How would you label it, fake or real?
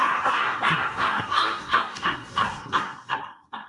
fake